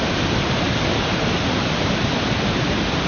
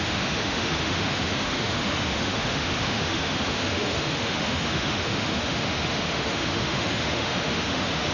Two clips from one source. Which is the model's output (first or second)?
second